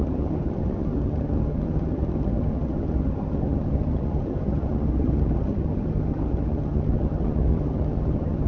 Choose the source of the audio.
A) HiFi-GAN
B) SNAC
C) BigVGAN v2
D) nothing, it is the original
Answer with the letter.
A